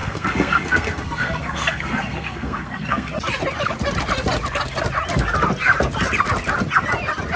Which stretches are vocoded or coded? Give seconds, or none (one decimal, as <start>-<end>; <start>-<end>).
0.0-3.1